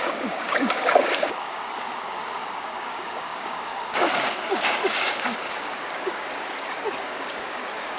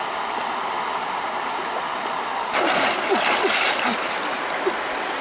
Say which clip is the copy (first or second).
first